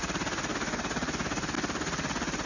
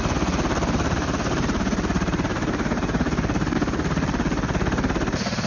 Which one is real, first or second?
first